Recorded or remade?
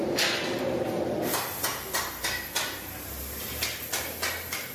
recorded